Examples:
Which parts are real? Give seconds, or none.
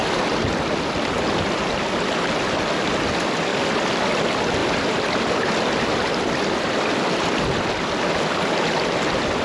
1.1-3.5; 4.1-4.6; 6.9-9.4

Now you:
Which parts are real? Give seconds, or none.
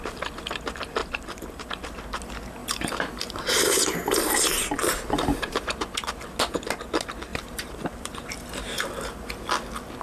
0.0-1.0; 1.7-2.6; 5.6-7.3; 9.3-10.0